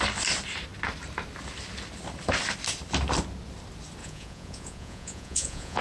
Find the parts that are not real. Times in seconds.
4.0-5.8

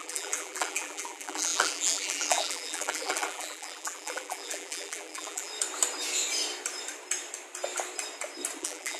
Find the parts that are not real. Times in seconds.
0.0-5.5; 8.6-9.0

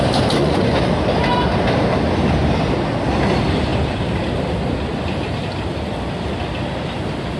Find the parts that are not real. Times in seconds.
0.4-0.9

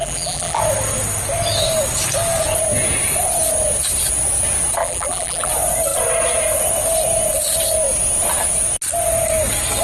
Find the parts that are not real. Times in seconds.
0.0-0.6; 4.8-5.5

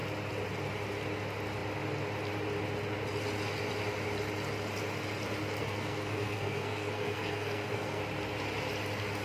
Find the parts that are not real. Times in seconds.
5.6-8.0

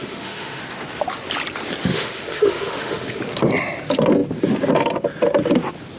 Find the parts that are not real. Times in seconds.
0.0-0.6; 1.9-3.2

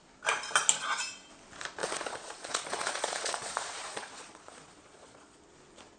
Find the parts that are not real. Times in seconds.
1.8-5.4